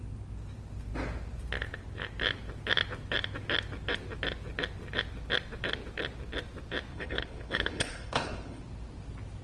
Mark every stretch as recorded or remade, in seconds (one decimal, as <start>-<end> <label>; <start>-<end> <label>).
0.0-6.9 recorded; 6.9-8.6 remade; 8.6-9.4 recorded